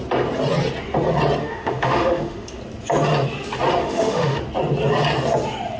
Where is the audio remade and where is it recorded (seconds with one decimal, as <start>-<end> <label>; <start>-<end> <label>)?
0.0-1.4 recorded; 1.4-2.6 remade; 2.6-3.8 recorded; 3.8-4.4 remade; 4.4-5.8 recorded